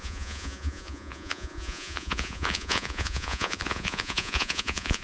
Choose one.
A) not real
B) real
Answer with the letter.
A